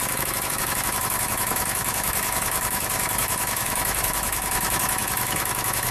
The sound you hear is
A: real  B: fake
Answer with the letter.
B